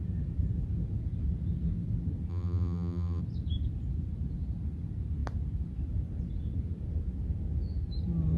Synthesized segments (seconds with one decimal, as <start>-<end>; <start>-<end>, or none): 2.3-3.2